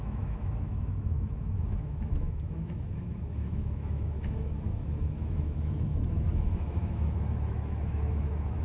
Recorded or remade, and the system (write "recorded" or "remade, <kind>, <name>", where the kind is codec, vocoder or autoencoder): remade, autoencoder, DAC-VAE